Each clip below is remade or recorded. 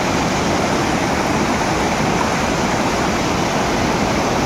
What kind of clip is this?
recorded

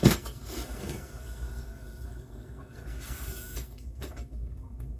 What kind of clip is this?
remade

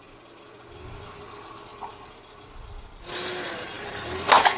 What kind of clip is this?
recorded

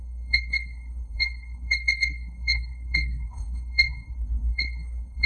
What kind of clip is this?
remade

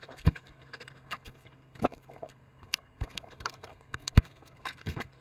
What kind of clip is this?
remade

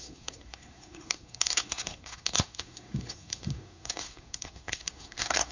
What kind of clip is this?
remade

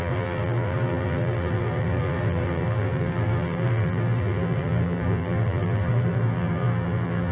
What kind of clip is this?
remade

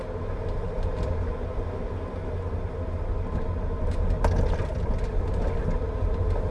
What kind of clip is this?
recorded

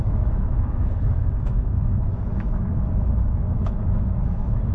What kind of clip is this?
remade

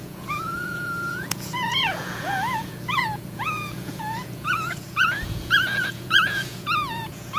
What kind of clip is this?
remade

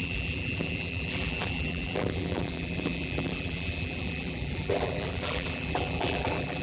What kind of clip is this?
remade